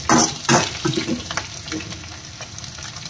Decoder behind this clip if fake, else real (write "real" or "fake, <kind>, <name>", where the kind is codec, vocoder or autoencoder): real